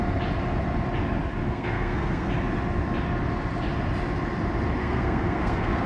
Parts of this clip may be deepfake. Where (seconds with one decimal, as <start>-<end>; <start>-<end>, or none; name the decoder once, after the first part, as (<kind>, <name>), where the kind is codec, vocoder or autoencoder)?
1.4-2.3 (codec, SNAC); 4.8-5.9